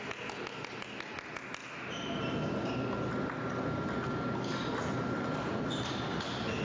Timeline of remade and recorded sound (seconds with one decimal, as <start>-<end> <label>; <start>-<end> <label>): 0.0-4.6 recorded; 4.6-5.6 remade; 5.6-6.6 recorded